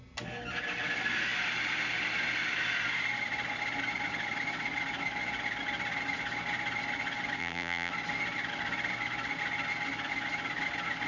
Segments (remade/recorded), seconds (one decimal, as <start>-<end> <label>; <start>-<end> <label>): 0.0-7.4 recorded; 7.4-7.9 remade; 7.9-11.1 recorded

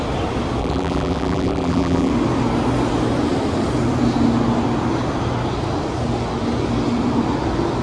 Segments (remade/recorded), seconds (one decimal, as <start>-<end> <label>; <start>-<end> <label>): 0.0-0.6 recorded; 0.6-2.1 remade; 2.1-7.8 recorded

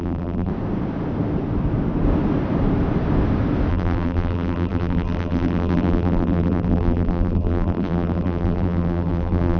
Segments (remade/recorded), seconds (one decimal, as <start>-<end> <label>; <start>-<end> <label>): 0.0-0.5 remade; 0.5-3.7 recorded; 3.7-9.6 remade

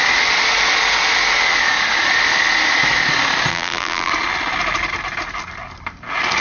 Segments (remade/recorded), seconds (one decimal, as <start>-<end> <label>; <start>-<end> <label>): 0.0-3.5 recorded; 3.5-4.1 remade; 4.1-6.4 recorded